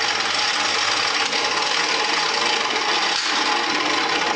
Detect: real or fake real